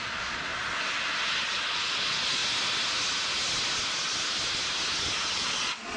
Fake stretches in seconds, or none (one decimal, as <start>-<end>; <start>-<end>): 0.0-0.5; 1.3-2.4; 5.2-6.0